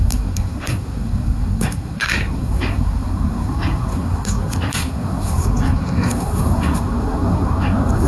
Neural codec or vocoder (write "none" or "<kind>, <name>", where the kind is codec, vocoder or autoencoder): codec, SNAC